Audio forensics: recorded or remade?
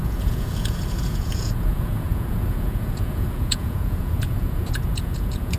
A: remade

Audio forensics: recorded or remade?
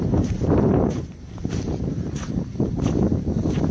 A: remade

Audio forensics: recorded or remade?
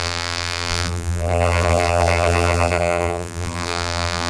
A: remade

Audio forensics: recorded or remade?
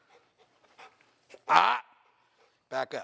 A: remade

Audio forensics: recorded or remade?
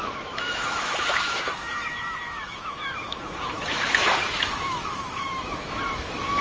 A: remade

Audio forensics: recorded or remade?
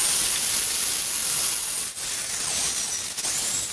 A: recorded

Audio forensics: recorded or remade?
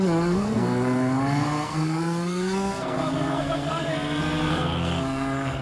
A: remade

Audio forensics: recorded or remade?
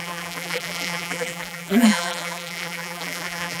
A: remade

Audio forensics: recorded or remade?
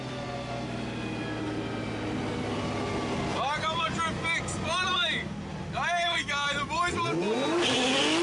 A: recorded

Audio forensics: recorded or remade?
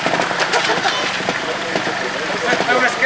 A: recorded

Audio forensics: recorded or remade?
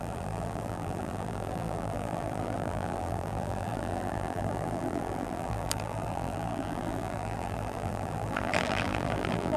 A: remade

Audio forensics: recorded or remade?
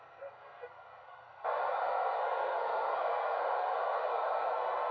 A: remade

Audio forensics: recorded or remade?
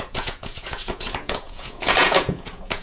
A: remade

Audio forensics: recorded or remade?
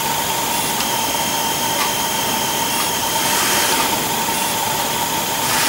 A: recorded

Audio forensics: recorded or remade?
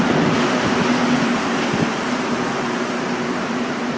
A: recorded